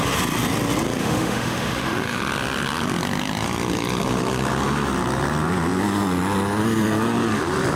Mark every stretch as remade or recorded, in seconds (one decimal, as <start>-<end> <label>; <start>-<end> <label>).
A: 0.0-1.0 recorded; 1.0-2.2 remade; 2.2-7.8 recorded